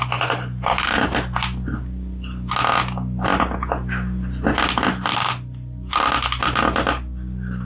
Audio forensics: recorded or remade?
recorded